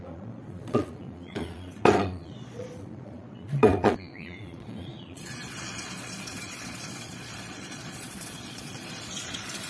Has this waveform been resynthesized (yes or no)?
yes